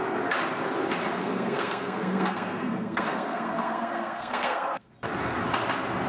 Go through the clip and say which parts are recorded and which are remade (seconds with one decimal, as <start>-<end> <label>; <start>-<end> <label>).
0.0-1.2 recorded; 1.2-4.9 remade; 4.9-6.1 recorded